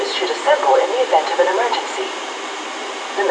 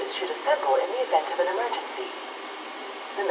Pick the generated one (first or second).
first